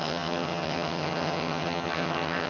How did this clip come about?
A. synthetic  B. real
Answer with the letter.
A